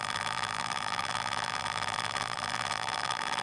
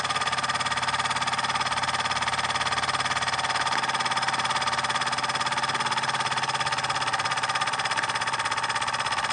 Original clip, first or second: second